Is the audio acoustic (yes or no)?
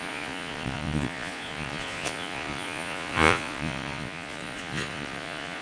no